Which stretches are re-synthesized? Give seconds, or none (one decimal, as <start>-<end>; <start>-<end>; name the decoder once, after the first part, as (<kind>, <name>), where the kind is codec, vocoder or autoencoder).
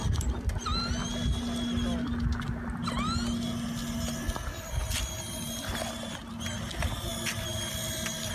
none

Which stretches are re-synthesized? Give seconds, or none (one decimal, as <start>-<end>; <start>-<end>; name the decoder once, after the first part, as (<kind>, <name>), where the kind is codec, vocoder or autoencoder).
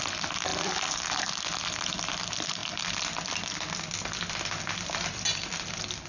0.0-2.6 (vocoder, BigVGAN v2); 4.3-6.1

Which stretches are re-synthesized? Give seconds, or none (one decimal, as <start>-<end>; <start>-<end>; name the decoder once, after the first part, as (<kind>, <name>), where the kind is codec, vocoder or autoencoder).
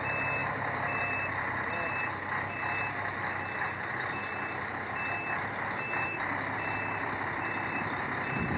0.4-2.0 (vocoder, BigVGAN v2); 4.2-8.6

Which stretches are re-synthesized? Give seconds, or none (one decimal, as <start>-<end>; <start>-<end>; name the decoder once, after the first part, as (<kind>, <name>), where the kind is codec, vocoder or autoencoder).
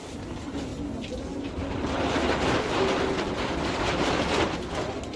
none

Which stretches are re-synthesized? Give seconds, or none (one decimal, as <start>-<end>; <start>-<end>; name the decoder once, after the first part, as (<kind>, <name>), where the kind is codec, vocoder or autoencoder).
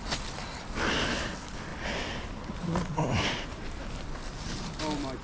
1.7-4.8 (vocoder, BigVGAN v2)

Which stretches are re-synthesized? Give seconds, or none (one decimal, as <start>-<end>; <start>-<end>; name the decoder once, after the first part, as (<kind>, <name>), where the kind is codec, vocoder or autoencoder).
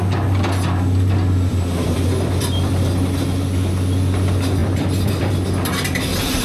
1.5-2.8 (vocoder, BigVGAN v2); 4.6-5.3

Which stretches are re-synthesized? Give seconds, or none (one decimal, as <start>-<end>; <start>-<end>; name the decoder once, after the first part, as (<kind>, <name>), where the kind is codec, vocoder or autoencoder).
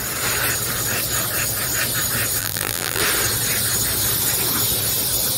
2.4-3.0 (vocoder, BigVGAN v2)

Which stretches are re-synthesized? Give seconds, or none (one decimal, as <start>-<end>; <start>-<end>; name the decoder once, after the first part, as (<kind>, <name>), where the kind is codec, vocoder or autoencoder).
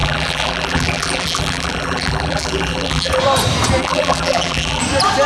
0.0-3.2 (vocoder, BigVGAN v2); 3.8-4.8